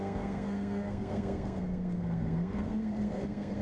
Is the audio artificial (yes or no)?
yes